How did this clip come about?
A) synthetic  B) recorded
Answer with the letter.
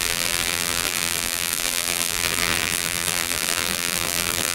A